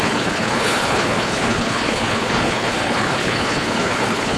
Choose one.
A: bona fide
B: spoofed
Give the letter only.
B